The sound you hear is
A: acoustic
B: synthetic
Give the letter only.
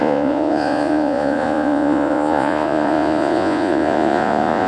B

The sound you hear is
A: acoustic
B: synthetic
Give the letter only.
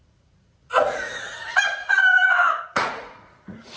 B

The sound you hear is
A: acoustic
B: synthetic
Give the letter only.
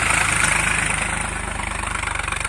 A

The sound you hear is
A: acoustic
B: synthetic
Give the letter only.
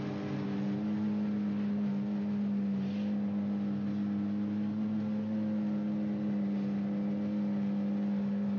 A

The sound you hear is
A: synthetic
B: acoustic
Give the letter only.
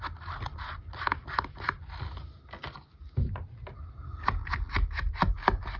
B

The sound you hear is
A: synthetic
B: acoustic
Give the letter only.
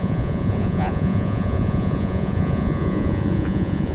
A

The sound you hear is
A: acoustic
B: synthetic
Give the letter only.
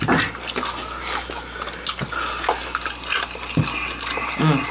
A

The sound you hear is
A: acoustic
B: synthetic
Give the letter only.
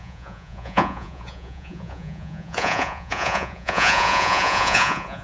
B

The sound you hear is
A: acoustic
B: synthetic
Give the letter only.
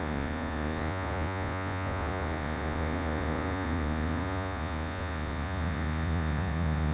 B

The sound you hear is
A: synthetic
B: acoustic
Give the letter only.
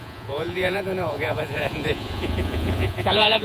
A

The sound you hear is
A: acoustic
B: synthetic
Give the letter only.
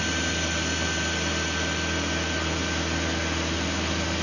A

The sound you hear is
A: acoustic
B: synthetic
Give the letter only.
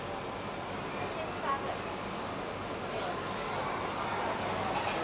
A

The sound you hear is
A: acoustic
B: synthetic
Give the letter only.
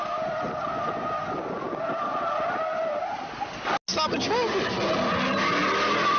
A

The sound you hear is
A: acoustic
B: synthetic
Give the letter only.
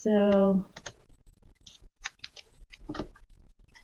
B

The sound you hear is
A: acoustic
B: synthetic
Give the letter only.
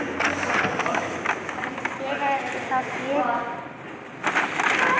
A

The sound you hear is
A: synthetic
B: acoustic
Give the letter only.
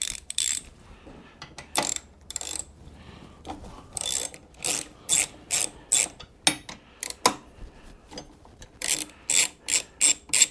B